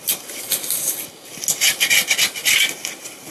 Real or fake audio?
real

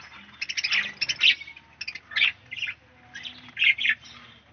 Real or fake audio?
real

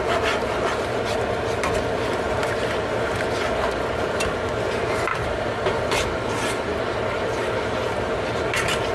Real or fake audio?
real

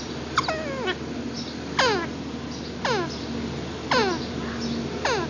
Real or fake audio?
real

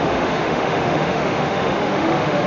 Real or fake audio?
fake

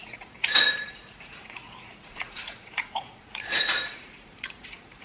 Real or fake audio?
fake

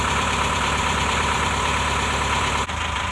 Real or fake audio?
fake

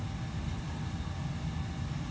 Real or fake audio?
real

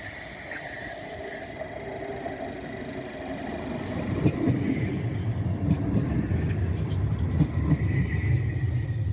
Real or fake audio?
real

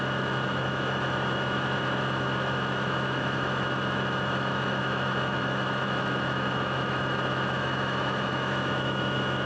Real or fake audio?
fake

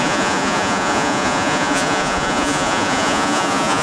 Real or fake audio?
fake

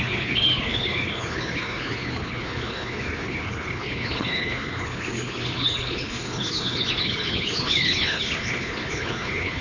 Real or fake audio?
fake